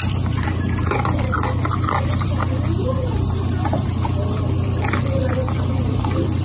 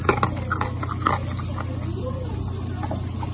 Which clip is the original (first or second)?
second